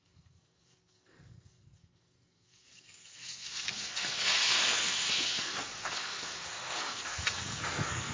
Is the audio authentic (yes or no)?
no